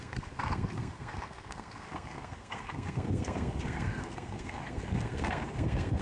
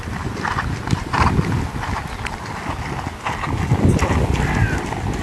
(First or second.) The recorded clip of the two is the second